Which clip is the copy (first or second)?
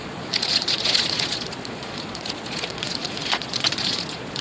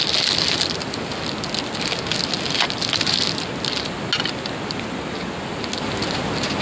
first